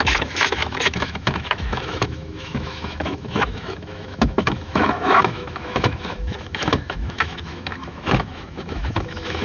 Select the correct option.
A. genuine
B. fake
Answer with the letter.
B